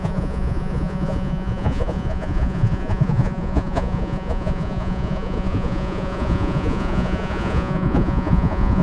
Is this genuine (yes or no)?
no